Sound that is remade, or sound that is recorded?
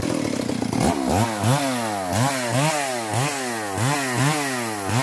recorded